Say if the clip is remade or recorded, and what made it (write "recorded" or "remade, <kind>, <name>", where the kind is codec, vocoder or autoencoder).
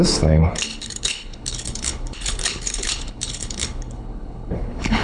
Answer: remade, codec, HILCodec